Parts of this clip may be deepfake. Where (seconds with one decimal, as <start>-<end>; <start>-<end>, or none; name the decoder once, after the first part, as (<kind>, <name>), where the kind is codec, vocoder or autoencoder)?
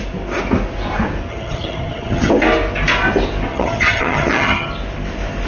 1.3-2.3 (vocoder, HiFi-GAN); 3.5-4.7